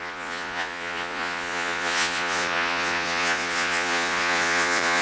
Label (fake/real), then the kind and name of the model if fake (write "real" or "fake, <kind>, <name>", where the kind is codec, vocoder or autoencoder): fake, vocoder, Vocos